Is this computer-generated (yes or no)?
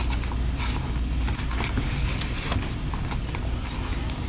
no